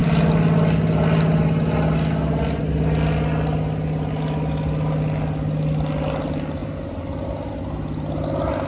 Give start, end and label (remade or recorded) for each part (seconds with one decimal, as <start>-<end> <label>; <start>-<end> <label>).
0.0-8.7 recorded